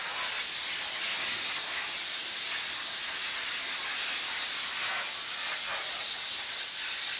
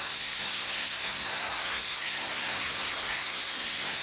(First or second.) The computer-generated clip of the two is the second